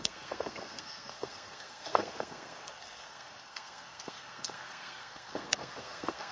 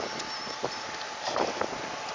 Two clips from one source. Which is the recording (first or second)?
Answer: second